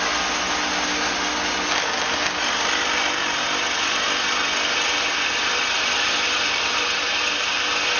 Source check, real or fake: real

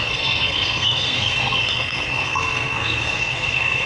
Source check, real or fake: fake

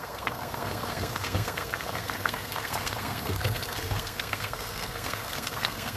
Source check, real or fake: fake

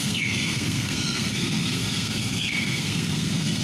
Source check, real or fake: fake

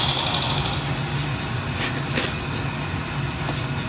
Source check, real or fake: real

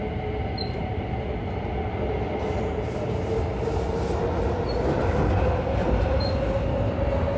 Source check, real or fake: real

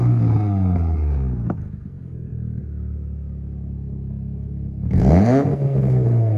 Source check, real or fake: fake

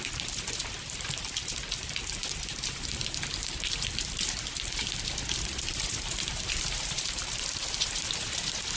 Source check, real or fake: real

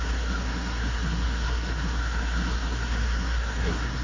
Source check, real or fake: fake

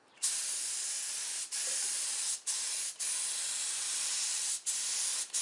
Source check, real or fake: real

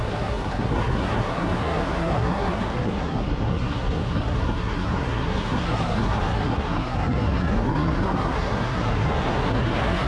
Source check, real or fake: fake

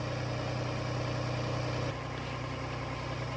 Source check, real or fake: real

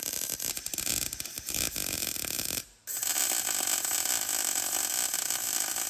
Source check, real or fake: real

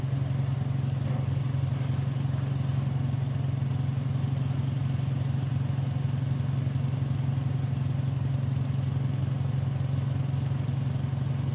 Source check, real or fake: real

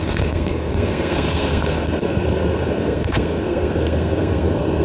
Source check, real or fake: fake